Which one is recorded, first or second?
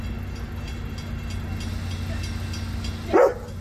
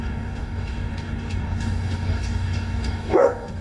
first